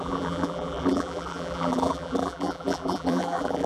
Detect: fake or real fake